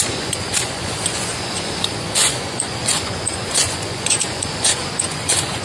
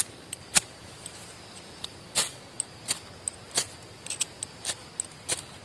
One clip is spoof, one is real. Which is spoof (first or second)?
first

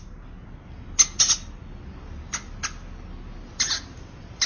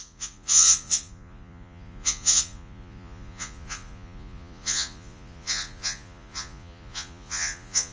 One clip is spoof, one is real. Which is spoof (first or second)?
second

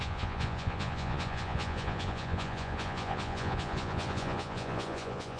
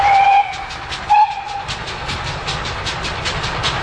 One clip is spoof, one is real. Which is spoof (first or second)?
first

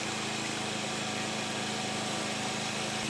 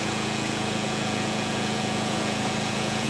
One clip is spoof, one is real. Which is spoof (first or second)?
second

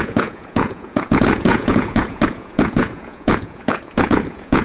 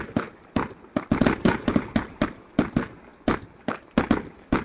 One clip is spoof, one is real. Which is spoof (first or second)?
first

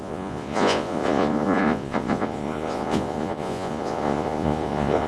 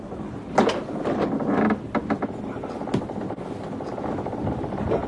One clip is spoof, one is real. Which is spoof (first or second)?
first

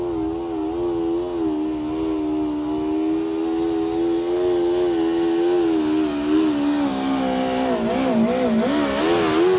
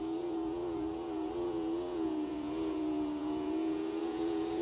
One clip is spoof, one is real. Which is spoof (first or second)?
second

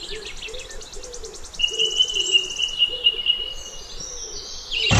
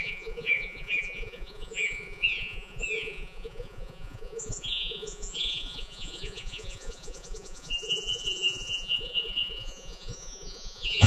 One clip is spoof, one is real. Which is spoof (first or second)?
second